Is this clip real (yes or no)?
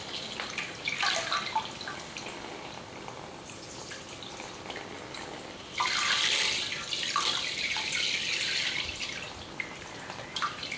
no